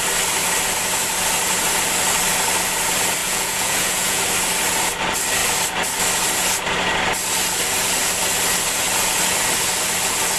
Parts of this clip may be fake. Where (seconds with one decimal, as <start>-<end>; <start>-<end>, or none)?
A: 3.2-4.2